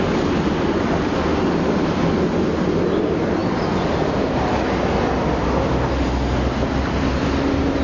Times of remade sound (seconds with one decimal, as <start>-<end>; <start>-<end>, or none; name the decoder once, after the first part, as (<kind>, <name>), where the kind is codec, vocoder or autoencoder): none